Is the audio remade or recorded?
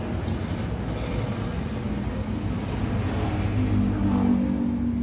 recorded